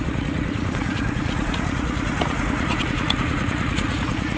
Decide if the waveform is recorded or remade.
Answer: remade